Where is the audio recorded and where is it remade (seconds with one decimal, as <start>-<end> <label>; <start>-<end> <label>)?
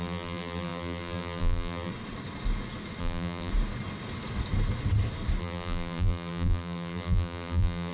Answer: 0.0-1.9 remade; 1.9-3.0 recorded; 3.0-3.5 remade; 3.5-5.4 recorded; 5.4-7.9 remade